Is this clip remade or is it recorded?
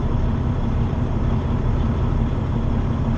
remade